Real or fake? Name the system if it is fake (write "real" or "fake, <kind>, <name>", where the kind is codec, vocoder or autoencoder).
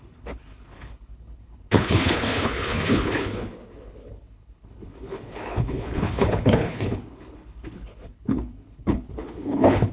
fake, codec, HILCodec